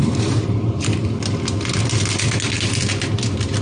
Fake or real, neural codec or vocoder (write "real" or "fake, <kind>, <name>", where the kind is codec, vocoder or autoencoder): real